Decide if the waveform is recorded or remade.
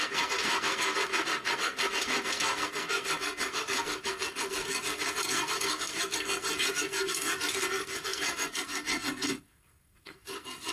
remade